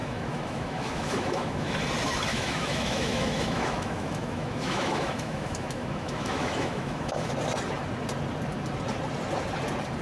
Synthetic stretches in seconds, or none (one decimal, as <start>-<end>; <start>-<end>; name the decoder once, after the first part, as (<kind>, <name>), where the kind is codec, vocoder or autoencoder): 0.0-1.8 (autoencoder, DAC-VAE); 2.3-7.3